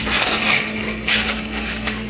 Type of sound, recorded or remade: remade